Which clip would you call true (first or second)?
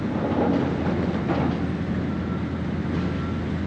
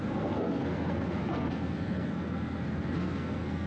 first